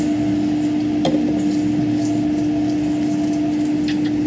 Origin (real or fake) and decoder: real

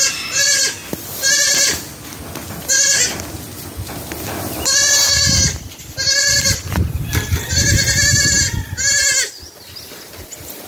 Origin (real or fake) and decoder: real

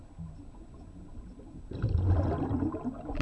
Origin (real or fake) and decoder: real